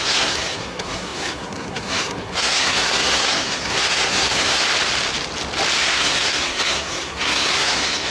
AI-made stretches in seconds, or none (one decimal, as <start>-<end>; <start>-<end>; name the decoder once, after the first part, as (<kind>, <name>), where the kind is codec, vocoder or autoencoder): 0.0-4.6 (codec, SNAC); 5.8-8.1